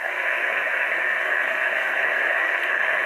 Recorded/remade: remade